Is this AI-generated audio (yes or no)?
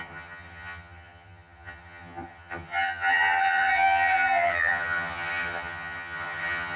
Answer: yes